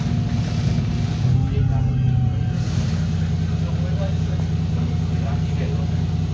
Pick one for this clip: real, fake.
real